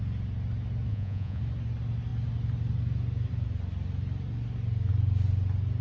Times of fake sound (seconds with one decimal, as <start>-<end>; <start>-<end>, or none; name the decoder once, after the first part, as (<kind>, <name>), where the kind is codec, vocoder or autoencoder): 0.9-1.4 (vocoder, Vocos)